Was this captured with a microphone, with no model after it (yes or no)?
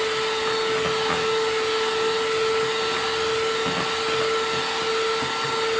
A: yes